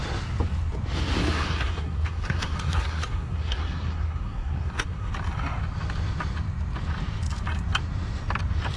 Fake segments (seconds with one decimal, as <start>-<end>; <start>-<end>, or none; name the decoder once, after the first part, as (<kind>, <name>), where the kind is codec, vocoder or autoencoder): 1.2-5.1 (codec, SNAC)